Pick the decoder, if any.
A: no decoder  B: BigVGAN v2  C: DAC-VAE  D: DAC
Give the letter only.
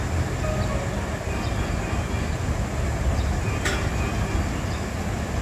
A